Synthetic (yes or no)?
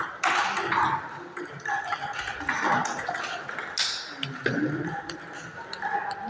no